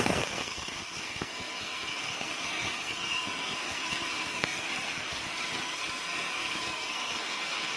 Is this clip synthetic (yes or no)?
yes